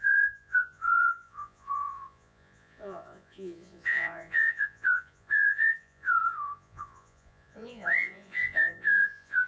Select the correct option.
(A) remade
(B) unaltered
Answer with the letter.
A